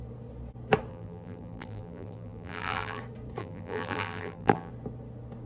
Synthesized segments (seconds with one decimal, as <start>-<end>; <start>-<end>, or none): 0.9-3.0; 3.4-4.7